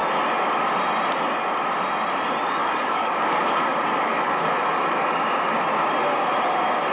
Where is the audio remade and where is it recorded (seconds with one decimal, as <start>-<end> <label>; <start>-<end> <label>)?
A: 0.0-2.6 recorded; 2.6-5.1 remade; 5.1-6.9 recorded